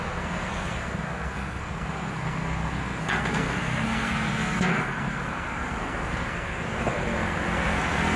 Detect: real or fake fake